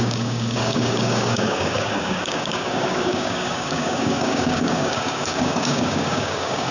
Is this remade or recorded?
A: remade